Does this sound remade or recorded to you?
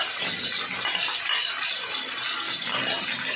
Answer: recorded